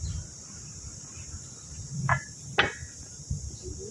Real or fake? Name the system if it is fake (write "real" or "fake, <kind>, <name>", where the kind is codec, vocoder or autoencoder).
real